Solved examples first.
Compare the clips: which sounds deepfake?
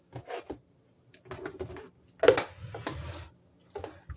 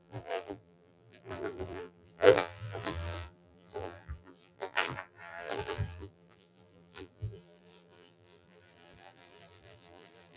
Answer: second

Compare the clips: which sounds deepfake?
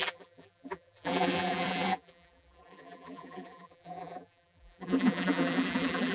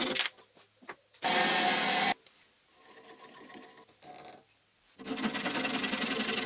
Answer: first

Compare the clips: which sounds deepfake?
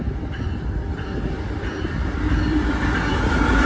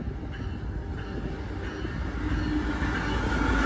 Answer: first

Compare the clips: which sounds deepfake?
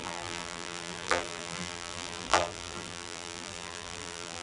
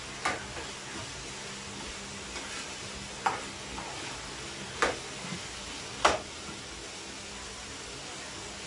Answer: first